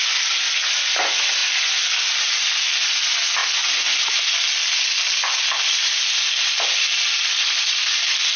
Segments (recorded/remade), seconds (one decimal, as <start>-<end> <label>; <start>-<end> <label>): 0.0-8.4 recorded